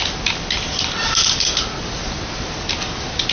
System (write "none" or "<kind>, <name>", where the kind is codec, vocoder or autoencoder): none